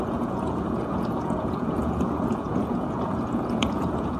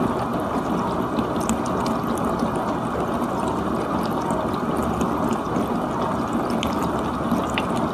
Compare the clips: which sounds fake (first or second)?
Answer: first